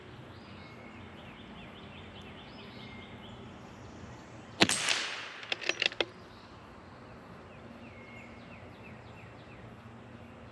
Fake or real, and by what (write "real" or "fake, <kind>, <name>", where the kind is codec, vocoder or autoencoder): real